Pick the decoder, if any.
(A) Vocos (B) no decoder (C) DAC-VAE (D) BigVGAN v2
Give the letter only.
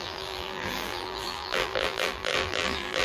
D